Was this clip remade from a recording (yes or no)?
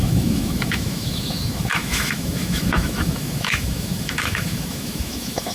yes